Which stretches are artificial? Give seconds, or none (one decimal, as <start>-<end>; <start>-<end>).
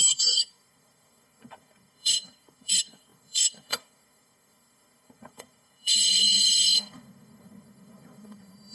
0.0-8.7